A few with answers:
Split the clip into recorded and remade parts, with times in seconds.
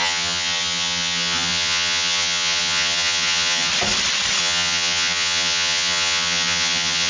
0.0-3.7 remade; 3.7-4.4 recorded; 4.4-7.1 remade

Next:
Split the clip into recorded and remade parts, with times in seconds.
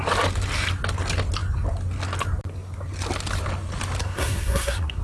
0.0-4.0 recorded; 4.0-5.0 remade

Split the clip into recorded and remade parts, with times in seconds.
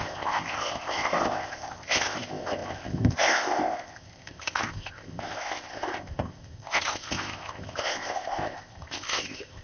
0.0-9.6 remade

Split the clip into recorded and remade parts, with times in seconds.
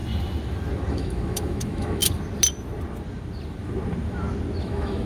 0.0-0.9 recorded; 0.9-2.0 remade; 2.0-4.6 recorded; 4.6-5.1 remade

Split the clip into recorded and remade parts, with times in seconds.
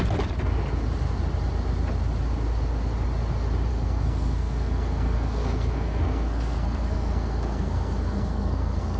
0.0-3.7 recorded; 3.7-9.0 remade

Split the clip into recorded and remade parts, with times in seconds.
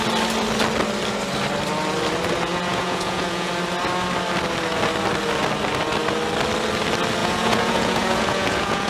0.0-2.5 recorded; 2.5-3.5 remade; 3.5-7.2 recorded; 7.2-8.9 remade